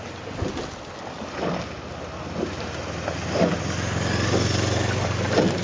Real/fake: real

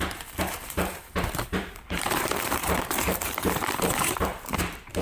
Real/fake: fake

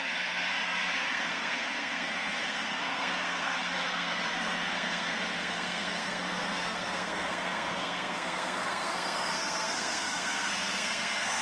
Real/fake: fake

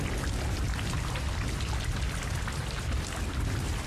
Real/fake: real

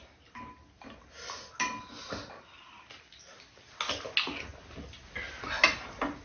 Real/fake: real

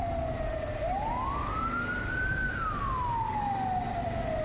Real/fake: real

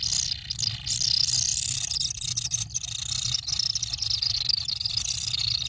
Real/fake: real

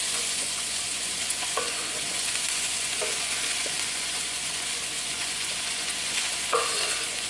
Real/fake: fake